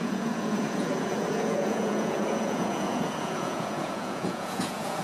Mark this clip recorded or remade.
remade